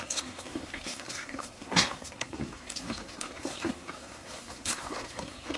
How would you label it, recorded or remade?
remade